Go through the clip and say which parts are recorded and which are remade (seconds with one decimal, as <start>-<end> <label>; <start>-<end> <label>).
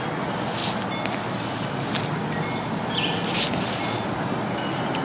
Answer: 0.0-5.0 recorded